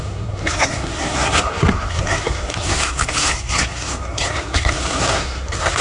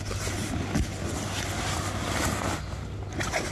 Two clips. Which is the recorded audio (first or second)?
second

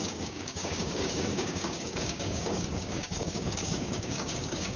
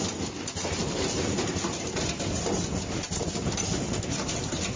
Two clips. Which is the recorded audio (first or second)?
second